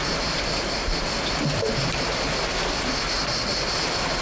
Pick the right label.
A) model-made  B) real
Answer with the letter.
B